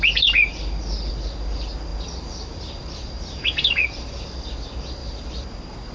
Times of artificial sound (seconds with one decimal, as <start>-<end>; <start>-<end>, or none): 0.5-1.1; 1.9-4.2; 5.0-5.9